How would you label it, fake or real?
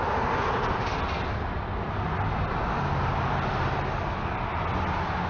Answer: real